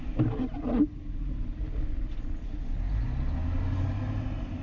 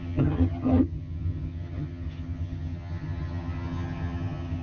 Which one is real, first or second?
first